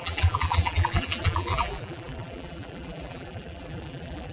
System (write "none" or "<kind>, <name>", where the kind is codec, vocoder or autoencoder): vocoder, BigVGAN v2